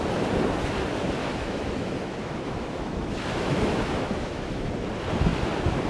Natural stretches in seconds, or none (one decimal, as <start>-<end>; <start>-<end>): 0.0-1.2; 4.7-5.9